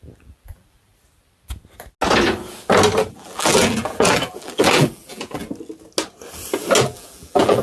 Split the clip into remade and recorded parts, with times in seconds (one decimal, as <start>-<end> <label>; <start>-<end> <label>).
0.0-0.9 remade; 0.9-3.0 recorded; 3.0-5.4 remade; 5.4-6.8 recorded; 6.8-7.6 remade